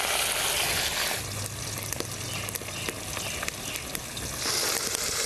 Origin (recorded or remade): recorded